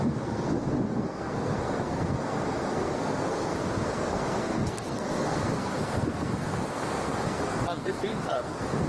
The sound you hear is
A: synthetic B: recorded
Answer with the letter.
A